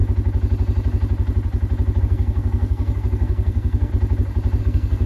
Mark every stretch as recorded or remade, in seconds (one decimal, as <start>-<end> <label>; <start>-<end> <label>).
0.0-2.0 recorded; 2.0-3.9 remade; 3.9-4.6 recorded; 4.6-5.1 remade

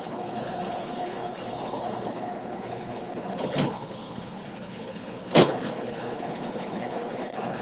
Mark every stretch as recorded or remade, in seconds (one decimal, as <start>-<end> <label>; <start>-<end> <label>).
0.0-7.6 remade

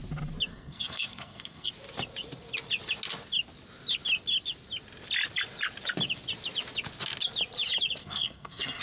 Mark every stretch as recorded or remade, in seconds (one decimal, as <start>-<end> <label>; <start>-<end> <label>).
0.0-0.5 recorded; 0.5-1.7 remade; 1.7-8.0 recorded; 8.0-8.8 remade

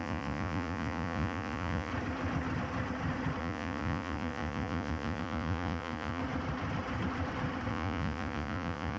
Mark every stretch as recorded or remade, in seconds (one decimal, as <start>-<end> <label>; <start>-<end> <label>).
0.0-1.9 remade; 1.9-3.4 recorded; 3.4-6.2 remade; 6.2-7.7 recorded; 7.7-9.0 remade

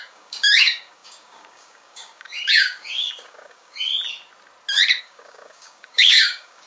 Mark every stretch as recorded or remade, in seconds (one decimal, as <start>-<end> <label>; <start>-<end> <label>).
0.0-3.9 remade; 3.9-5.0 recorded; 5.0-6.7 remade

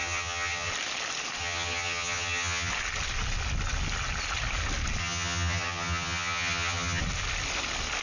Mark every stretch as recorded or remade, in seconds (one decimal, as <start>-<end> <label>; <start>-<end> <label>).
0.0-0.7 remade; 0.7-1.4 recorded; 1.4-2.7 remade; 2.7-5.0 recorded; 5.0-7.0 remade; 7.0-8.0 recorded